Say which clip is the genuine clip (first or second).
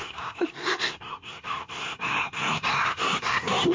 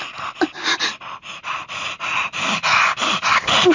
second